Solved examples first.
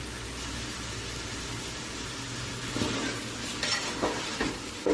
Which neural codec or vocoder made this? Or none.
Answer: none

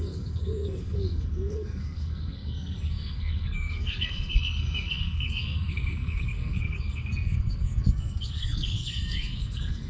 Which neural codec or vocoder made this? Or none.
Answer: codec, SNAC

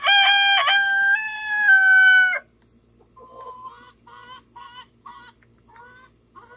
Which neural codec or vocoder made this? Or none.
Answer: none